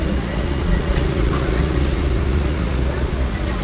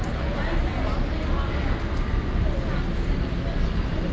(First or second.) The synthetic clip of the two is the first